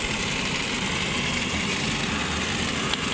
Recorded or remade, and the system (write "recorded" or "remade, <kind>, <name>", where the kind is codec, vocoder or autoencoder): recorded